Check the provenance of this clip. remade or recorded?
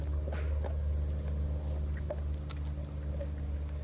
recorded